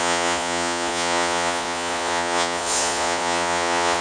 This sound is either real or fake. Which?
fake